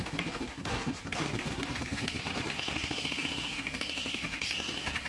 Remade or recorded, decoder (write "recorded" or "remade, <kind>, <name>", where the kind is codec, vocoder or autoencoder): remade, codec, SNAC